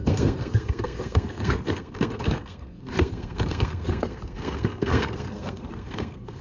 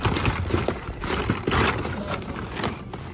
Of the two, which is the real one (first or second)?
second